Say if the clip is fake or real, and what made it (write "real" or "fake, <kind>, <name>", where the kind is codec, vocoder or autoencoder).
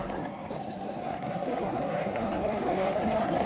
fake, codec, SNAC